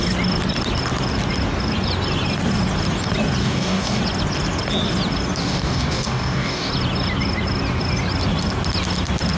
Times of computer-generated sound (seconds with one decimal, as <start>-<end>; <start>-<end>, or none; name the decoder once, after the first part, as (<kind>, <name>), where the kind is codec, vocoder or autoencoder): 3.4-4.0 (codec, DAC); 5.4-6.7